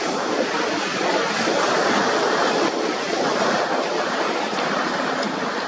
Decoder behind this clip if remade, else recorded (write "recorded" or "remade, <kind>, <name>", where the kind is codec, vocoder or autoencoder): recorded